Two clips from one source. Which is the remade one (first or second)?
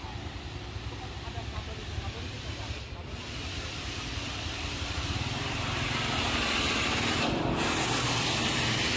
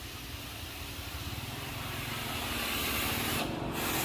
first